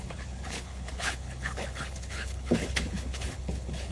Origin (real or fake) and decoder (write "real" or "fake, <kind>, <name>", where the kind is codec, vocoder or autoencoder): fake, codec, HILCodec